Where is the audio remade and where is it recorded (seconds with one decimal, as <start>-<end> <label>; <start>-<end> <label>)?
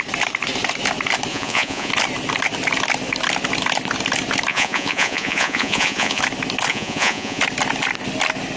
0.0-1.3 recorded; 1.3-1.9 remade; 1.9-4.5 recorded; 4.5-6.2 remade; 6.2-6.7 recorded; 6.7-7.4 remade; 7.4-8.6 recorded